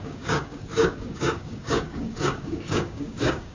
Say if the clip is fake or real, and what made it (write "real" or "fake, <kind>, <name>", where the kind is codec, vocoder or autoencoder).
fake, codec, DAC